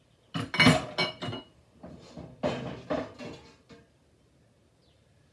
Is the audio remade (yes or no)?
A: no